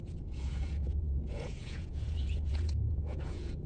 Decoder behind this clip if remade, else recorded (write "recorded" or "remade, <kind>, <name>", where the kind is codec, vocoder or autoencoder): remade, vocoder, Vocos